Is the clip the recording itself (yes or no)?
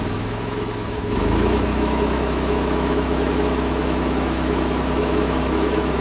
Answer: no